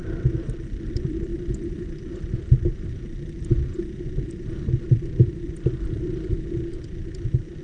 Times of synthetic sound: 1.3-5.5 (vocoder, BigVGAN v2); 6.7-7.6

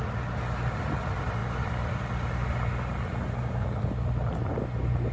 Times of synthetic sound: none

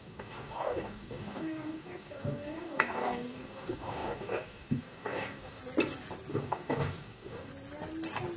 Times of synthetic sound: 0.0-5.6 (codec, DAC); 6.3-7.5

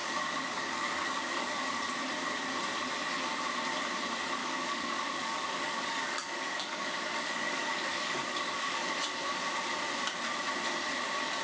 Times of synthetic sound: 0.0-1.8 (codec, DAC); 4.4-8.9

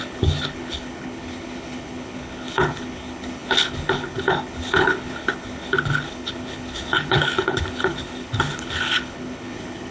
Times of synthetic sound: 0.0-9.9 (codec, HILCodec)

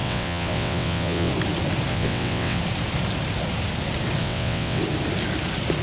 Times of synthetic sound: 0.0-1.3 (vocoder, WaveNeXt); 1.9-2.6; 4.2-4.8

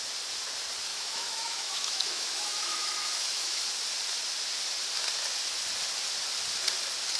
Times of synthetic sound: 0.9-3.6 (autoencoder, DAC-VAE)